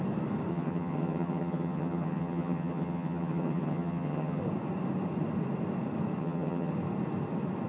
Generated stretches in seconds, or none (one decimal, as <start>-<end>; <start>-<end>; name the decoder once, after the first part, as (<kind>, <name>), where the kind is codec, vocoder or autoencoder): 0.5-4.4 (vocoder, HiFi-GAN); 6.2-6.7